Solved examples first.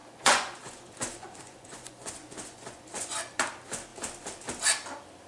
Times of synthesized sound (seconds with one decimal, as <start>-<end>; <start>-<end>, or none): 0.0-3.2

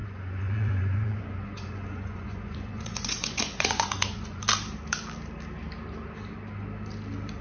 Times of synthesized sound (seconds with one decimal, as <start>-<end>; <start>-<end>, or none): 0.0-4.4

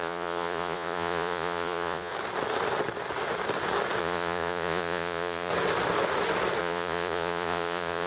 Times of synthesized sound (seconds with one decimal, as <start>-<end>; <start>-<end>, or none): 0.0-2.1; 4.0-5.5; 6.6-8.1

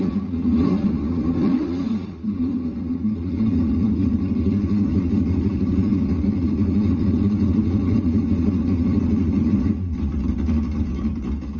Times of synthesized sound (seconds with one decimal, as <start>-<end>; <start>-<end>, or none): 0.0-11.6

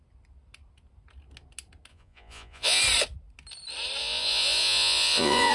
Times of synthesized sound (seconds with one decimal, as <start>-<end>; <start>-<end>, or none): 1.9-2.8; 4.0-5.5

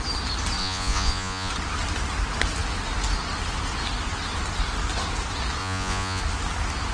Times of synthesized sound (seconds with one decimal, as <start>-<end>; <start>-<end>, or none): 0.6-1.5; 5.6-6.2